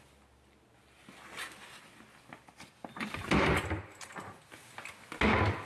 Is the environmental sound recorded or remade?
recorded